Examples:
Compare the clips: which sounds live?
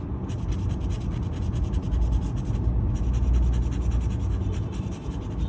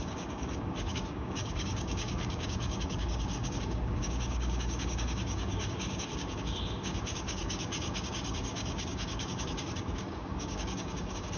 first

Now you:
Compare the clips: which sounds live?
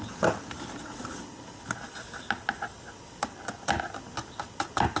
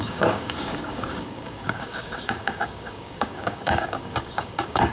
first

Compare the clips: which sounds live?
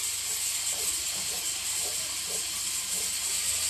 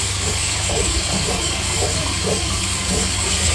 first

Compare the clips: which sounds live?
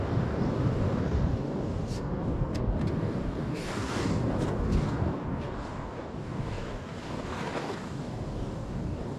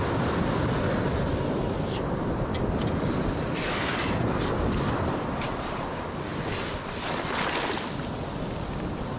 second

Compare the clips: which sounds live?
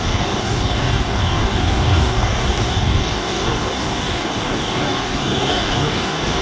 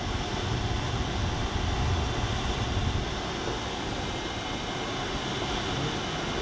second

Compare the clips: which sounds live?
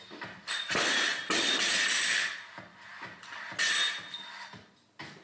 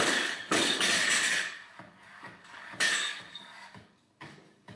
first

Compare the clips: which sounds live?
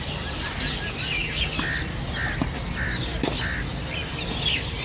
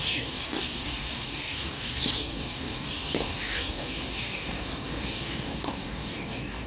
first